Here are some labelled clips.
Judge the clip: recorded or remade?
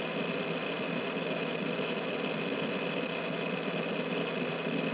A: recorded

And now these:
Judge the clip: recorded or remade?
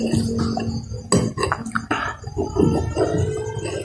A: recorded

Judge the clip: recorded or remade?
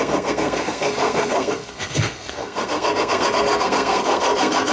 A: remade